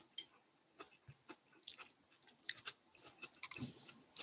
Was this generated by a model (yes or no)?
no